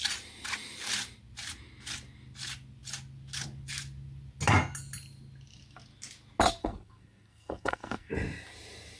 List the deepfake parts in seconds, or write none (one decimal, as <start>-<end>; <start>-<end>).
6.6-8.1